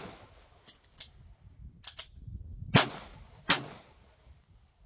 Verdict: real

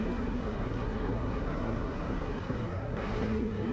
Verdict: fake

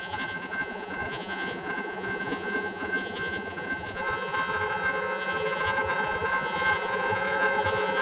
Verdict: fake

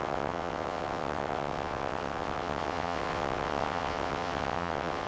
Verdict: fake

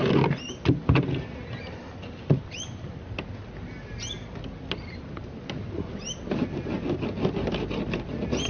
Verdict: real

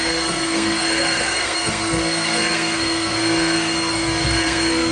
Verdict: fake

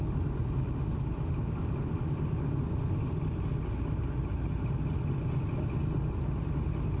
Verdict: real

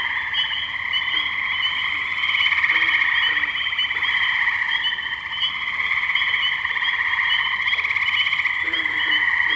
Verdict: real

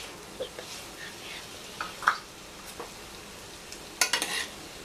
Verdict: real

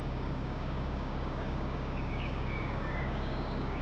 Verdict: fake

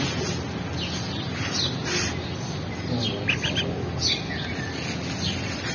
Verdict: real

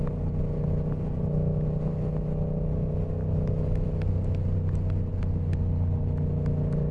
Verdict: real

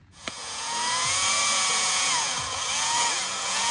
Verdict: fake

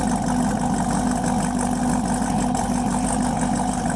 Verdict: real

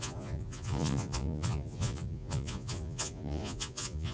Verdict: fake